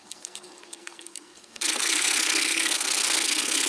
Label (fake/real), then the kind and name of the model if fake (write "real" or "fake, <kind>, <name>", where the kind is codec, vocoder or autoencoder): fake, codec, SNAC